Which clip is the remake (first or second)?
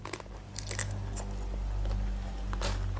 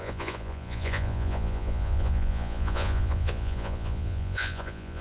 second